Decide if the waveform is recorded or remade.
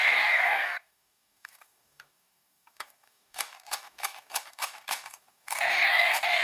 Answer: remade